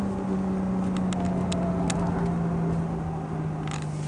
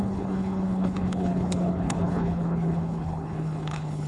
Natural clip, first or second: first